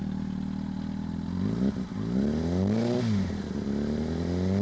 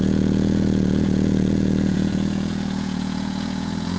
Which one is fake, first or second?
second